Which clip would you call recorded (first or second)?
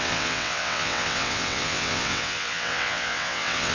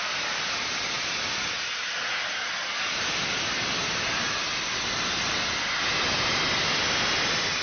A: second